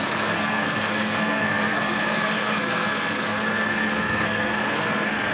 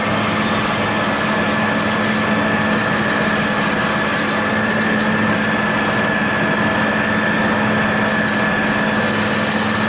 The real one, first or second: second